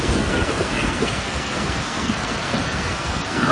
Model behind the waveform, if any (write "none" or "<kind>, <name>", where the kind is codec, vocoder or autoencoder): codec, SNAC